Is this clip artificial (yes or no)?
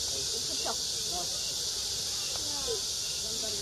no